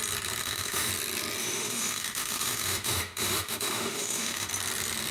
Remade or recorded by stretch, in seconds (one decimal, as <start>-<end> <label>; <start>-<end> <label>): 0.0-0.4 recorded; 0.4-0.9 remade; 0.9-1.4 recorded; 1.4-4.5 remade; 4.5-5.1 recorded